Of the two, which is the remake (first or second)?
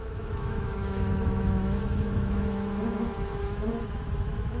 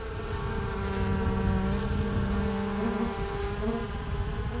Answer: first